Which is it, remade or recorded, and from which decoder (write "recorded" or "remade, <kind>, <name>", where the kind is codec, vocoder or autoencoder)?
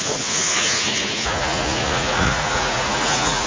remade, vocoder, Vocos